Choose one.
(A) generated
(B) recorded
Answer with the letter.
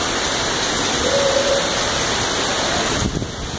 B